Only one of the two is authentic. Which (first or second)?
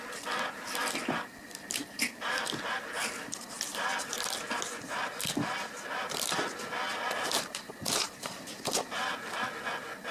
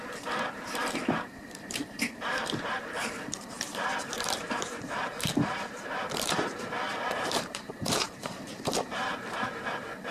first